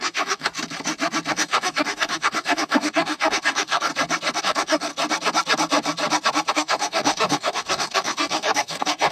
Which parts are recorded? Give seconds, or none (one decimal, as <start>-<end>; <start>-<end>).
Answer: 0.5-1.3; 3.9-4.4; 4.9-6.5